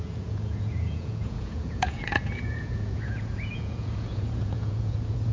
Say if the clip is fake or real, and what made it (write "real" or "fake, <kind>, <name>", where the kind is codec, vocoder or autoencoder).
fake, vocoder, Vocos